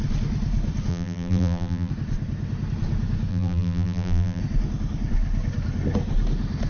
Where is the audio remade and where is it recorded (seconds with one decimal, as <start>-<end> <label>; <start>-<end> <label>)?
0.0-0.9 recorded; 0.9-1.9 remade; 1.9-3.3 recorded; 3.3-4.4 remade; 4.4-6.7 recorded